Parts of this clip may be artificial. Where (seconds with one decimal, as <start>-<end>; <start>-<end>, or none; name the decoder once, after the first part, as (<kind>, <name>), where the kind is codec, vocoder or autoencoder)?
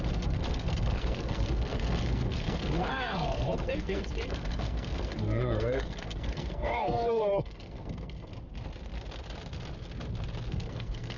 0.0-8.3 (codec, SNAC); 10.5-11.2